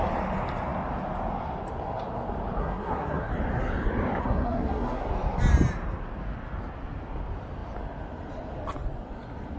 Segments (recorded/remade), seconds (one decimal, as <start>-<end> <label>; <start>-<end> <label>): 0.0-2.6 recorded; 2.6-3.3 remade; 3.3-4.2 recorded; 4.2-5.1 remade; 5.1-9.6 recorded

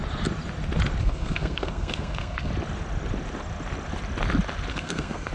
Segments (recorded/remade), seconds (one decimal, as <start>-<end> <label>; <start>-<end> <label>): 0.0-1.0 recorded; 1.0-2.5 remade; 2.5-4.7 recorded; 4.7-5.3 remade

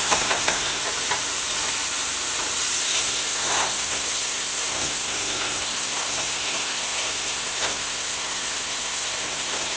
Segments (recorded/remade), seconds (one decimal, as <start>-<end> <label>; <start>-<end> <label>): 0.0-0.8 remade; 0.8-2.8 recorded; 2.8-9.8 remade

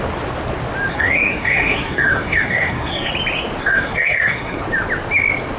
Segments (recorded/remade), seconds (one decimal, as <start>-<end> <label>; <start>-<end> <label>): 0.0-0.9 recorded; 0.9-3.1 remade; 3.1-3.6 recorded; 3.6-4.6 remade; 4.6-5.6 recorded

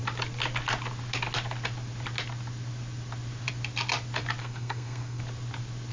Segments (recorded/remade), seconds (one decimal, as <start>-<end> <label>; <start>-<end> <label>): 0.0-4.4 recorded; 4.4-5.2 remade; 5.2-5.9 recorded

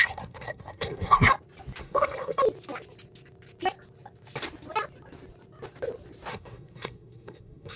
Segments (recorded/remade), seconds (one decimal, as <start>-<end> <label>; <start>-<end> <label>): 0.0-1.3 remade; 1.3-1.8 recorded; 1.8-2.4 remade; 2.4-6.3 recorded; 6.3-7.8 remade